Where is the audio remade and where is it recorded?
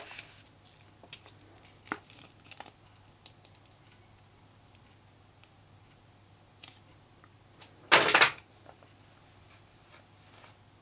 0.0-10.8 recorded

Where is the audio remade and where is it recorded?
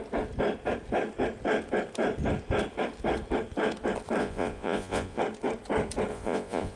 0.0-4.2 recorded; 4.2-5.2 remade; 5.2-6.1 recorded; 6.1-6.8 remade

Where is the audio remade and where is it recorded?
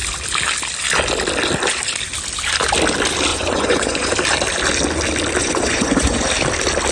0.0-3.3 recorded; 3.3-4.1 remade; 4.1-5.4 recorded; 5.4-6.3 remade; 6.3-6.9 recorded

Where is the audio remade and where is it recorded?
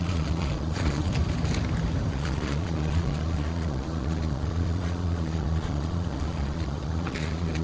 0.0-1.1 remade; 1.1-2.1 recorded; 2.1-7.6 remade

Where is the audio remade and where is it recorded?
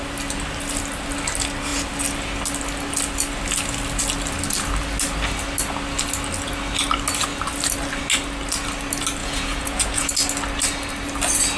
0.0-9.2 recorded; 9.2-10.1 remade; 10.1-11.6 recorded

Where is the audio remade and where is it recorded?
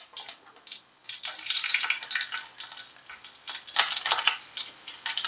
0.0-5.3 recorded